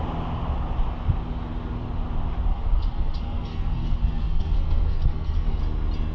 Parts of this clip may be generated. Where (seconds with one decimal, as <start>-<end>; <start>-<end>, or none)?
2.5-5.6